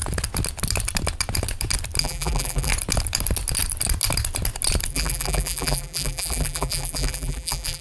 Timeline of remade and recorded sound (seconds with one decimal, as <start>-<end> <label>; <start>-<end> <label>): 0.0-2.0 recorded; 2.0-2.7 remade; 2.7-4.9 recorded; 4.9-7.8 remade